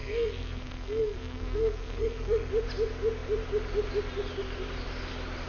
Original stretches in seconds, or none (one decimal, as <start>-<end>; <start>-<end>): 2.5-5.5